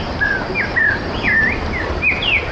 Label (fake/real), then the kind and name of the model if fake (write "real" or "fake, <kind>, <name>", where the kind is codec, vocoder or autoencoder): real